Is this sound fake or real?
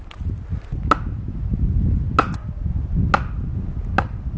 real